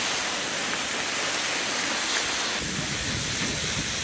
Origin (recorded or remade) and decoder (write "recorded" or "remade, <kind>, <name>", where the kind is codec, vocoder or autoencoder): recorded